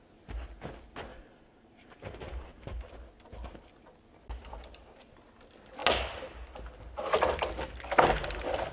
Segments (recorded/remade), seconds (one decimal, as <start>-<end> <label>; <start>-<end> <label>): 0.0-1.1 recorded; 1.1-2.8 remade; 2.8-8.7 recorded